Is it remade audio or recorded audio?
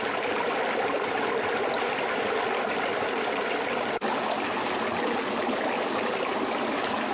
recorded